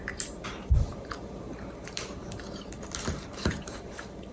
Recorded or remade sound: remade